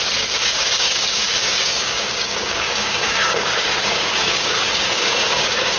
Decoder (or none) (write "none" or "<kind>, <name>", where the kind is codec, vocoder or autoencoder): codec, DAC